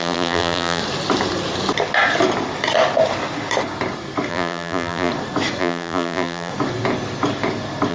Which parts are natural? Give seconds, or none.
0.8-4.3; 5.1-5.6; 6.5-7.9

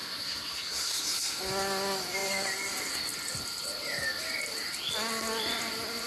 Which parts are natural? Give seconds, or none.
1.4-6.1

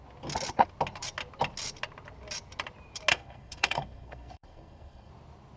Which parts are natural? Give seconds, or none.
0.0-3.1; 5.1-5.6

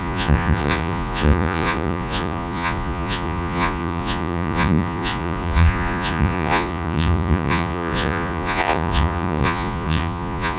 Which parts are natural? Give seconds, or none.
none